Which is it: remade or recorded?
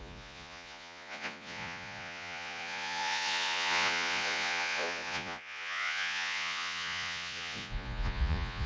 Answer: remade